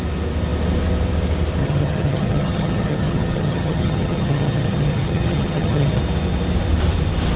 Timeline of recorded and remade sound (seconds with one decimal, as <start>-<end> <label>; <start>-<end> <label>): 0.0-1.6 recorded; 1.6-6.0 remade; 6.0-7.4 recorded